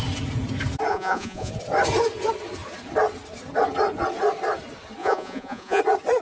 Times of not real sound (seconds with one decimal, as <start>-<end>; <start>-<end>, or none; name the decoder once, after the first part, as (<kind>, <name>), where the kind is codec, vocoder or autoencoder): 0.9-1.5 (vocoder, Vocos); 5.0-5.8